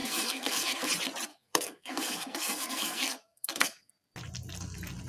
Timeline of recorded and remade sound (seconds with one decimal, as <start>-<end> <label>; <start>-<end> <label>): 0.0-0.9 remade; 0.9-1.3 recorded; 1.3-3.9 remade; 3.9-5.1 recorded